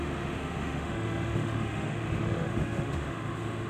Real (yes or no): no